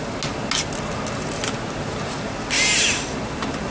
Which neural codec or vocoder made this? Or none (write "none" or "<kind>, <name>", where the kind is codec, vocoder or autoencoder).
none